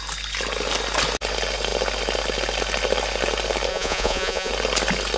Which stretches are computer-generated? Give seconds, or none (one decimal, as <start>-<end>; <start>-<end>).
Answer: 3.7-4.5